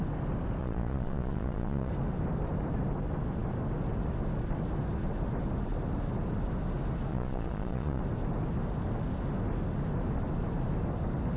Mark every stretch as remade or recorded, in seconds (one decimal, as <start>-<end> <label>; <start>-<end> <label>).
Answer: 0.0-0.6 recorded; 0.6-1.9 remade; 1.9-7.1 recorded; 7.1-8.0 remade; 8.0-11.4 recorded